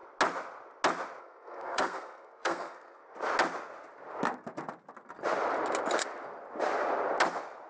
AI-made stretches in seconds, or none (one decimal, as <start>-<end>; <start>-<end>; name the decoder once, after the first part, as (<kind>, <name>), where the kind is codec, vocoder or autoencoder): 1.2-3.0 (codec, SNAC)